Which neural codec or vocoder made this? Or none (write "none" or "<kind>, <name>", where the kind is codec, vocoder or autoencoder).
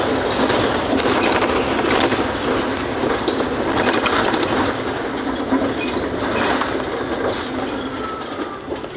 none